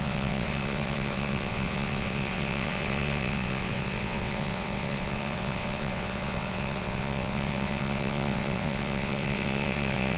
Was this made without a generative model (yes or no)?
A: no